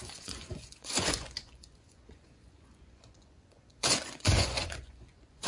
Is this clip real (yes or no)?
no